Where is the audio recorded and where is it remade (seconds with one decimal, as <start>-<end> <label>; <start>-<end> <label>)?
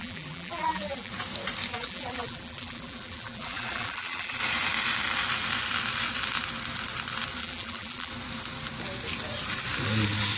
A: 0.0-1.1 remade; 1.1-1.7 recorded; 1.7-4.4 remade; 4.4-7.4 recorded; 7.4-8.1 remade; 8.1-10.4 recorded